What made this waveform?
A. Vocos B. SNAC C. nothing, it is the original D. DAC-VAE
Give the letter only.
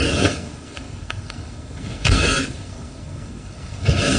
B